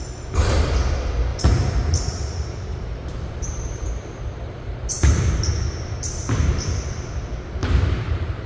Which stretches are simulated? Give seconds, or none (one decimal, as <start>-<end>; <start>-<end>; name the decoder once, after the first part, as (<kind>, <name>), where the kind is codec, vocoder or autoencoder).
1.3-5.3 (vocoder, BigVGAN v2); 7.6-8.5